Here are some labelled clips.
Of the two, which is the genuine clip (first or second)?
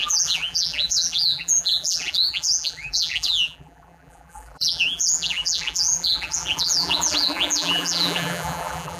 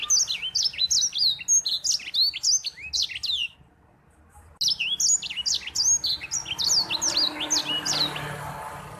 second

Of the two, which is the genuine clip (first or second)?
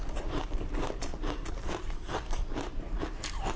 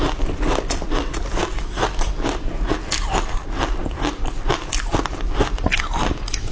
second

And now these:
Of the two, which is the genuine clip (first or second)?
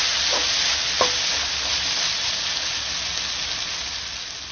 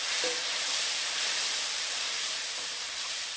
first